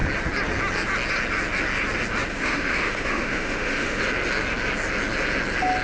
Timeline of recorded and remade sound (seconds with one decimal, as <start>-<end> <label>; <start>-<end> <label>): 0.0-2.3 recorded; 2.3-4.0 remade; 4.0-5.8 recorded